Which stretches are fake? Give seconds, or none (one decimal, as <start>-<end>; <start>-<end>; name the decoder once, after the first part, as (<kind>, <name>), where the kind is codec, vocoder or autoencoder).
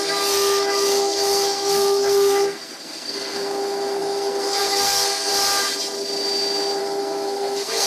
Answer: 0.0-5.3 (codec, SNAC); 6.8-7.9